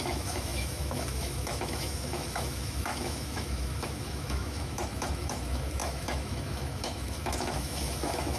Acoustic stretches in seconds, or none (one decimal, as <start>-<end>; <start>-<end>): none

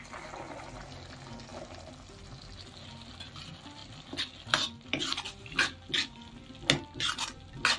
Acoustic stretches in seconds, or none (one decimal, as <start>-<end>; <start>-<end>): 0.0-7.8

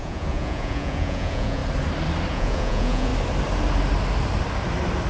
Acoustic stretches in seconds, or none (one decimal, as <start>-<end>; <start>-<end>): 1.6-2.3; 3.1-5.1

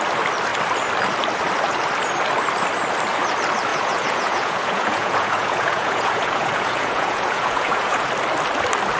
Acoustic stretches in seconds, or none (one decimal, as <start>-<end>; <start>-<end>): 0.0-3.7; 8.1-9.0

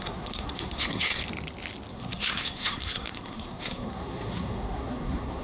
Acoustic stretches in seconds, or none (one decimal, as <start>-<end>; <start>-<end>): 1.2-1.9

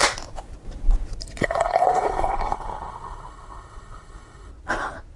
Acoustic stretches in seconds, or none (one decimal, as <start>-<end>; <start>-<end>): 0.0-1.4; 4.5-5.2

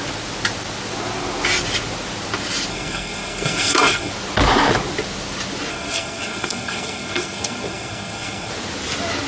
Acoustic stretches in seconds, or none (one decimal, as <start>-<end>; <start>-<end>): 0.0-2.7; 4.1-5.7; 8.5-9.3

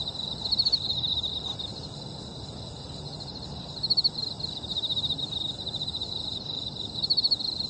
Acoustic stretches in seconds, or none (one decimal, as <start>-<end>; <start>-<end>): 0.0-7.7